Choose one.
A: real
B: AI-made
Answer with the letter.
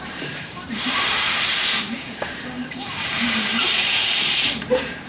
B